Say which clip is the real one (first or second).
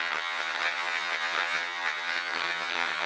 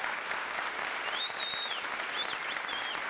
second